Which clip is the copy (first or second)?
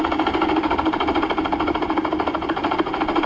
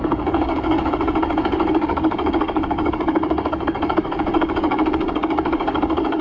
second